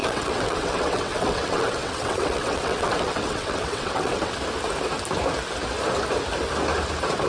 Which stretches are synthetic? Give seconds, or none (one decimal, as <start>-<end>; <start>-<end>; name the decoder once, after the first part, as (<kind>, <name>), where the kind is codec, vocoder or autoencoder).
0.0-4.4 (vocoder, WaveNeXt)

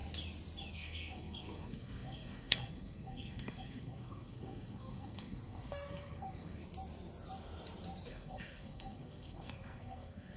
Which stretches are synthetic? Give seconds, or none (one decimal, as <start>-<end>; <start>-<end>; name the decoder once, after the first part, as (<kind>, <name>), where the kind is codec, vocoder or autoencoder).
0.7-6.6 (codec, SNAC); 8.1-10.4

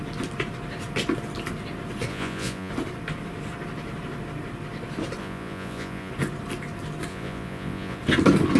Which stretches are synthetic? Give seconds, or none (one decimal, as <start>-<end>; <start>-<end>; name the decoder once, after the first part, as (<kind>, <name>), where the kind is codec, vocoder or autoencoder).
2.1-2.7 (vocoder, Vocos); 5.2-6.1; 7.1-8.0

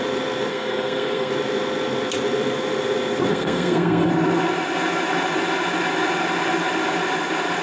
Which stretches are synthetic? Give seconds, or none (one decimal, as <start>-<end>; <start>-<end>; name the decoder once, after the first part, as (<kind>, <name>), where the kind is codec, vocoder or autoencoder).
0.5-1.3 (codec, SNAC); 3.3-4.1

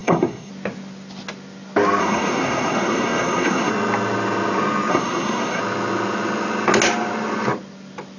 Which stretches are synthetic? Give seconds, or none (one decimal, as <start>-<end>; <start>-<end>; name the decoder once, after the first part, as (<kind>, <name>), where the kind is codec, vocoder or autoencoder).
0.0-0.5 (codec, SNAC); 2.0-3.7; 4.9-5.6